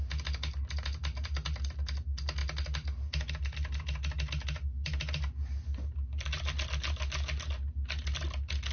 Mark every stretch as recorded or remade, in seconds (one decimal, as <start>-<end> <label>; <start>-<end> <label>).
0.0-8.7 recorded

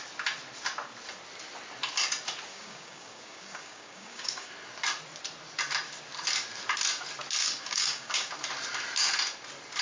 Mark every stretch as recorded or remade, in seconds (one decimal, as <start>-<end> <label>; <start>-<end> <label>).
0.0-2.5 recorded; 2.5-4.5 remade; 4.5-7.4 recorded; 7.4-8.3 remade; 8.3-9.8 recorded

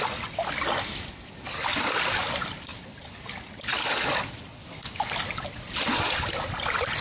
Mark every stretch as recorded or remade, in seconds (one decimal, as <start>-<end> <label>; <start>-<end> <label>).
0.0-4.6 recorded; 4.6-5.2 remade; 5.2-7.0 recorded

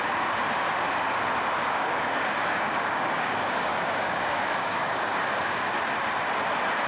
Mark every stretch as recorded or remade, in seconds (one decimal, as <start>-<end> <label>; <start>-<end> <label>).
0.0-1.6 recorded; 1.6-5.7 remade; 5.7-6.9 recorded

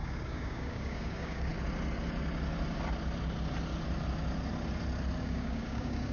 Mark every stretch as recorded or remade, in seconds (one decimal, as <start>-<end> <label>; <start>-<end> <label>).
0.0-1.5 remade; 1.5-5.2 recorded; 5.2-6.1 remade

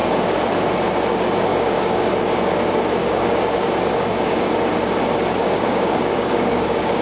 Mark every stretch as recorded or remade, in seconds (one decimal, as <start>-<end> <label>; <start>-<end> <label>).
0.0-0.5 remade; 0.5-1.5 recorded; 1.5-2.1 remade; 2.1-3.0 recorded; 3.0-4.5 remade; 4.5-5.4 recorded; 5.4-7.0 remade

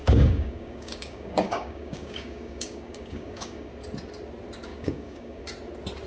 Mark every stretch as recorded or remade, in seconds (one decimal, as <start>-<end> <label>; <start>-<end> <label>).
0.0-3.7 remade; 3.7-4.7 recorded; 4.7-5.4 remade; 5.4-6.1 recorded

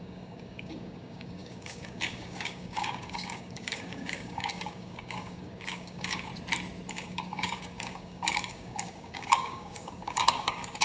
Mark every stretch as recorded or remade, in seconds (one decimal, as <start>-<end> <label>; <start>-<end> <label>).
0.0-6.3 remade; 6.3-6.9 recorded; 6.9-10.8 remade